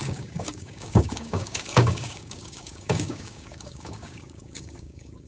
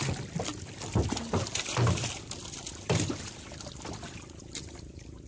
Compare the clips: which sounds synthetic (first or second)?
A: first